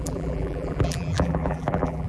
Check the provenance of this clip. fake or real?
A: fake